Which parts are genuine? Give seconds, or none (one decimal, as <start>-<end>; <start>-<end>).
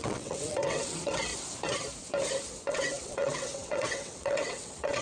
1.3-2.7